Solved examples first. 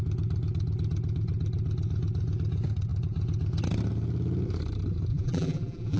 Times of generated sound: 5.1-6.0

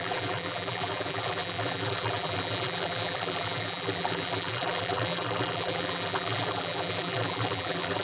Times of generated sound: 0.0-8.0

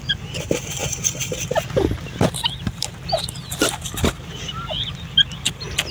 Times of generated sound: 0.0-5.9

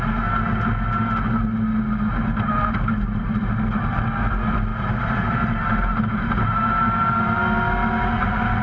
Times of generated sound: 4.7-6.3

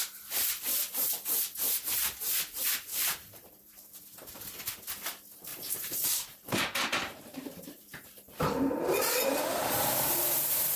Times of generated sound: 2.9-3.9; 5.5-10.8